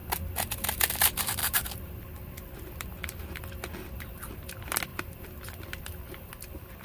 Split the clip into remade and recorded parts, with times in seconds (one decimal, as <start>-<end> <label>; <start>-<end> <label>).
0.0-0.6 remade; 0.6-1.4 recorded; 1.4-4.0 remade; 4.0-4.9 recorded; 4.9-6.3 remade; 6.3-6.8 recorded

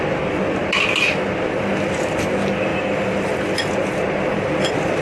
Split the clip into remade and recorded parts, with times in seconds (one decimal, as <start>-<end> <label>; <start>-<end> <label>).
0.0-5.0 recorded

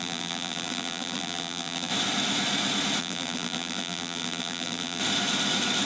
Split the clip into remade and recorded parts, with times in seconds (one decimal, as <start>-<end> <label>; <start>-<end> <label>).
0.0-1.9 remade; 1.9-3.0 recorded; 3.0-5.0 remade; 5.0-5.9 recorded

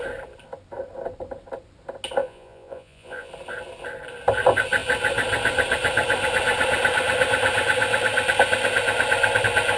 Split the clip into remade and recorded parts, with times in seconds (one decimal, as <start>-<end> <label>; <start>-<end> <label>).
0.0-2.2 recorded; 2.2-3.3 remade; 3.3-9.8 recorded

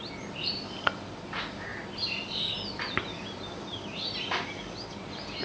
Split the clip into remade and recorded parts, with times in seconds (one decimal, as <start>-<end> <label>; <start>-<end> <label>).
0.0-5.4 recorded

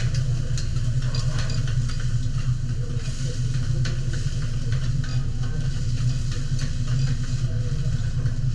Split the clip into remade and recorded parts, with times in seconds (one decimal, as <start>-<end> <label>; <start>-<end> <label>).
0.0-8.5 recorded